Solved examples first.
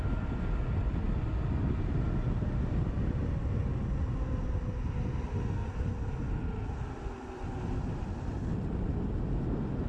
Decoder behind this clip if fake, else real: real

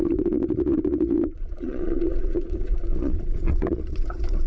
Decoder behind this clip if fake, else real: fake, vocoder, Vocos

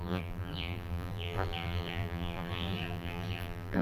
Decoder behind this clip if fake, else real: fake, vocoder, BigVGAN v2